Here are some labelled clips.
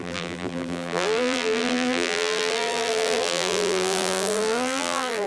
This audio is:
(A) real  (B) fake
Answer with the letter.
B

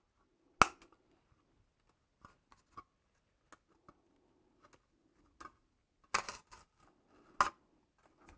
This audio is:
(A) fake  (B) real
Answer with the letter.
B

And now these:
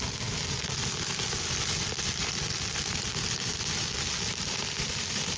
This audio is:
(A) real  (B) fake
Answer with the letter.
A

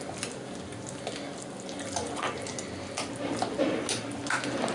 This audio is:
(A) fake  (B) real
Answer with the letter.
B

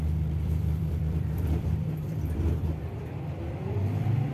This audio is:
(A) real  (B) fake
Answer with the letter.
B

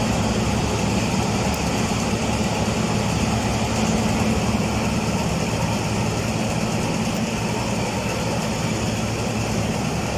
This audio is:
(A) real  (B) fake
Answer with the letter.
A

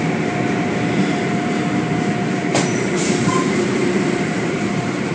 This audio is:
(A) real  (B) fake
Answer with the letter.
B